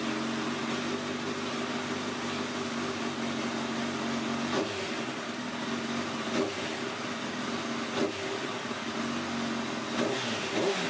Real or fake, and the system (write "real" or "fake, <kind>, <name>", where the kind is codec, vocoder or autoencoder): real